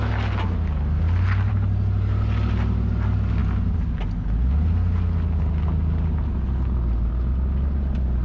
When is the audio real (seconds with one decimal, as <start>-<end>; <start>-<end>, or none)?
0.0-8.2